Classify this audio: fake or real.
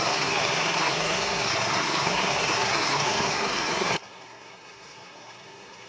fake